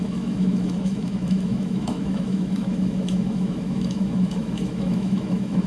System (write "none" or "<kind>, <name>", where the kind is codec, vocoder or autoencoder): autoencoder, DAC-VAE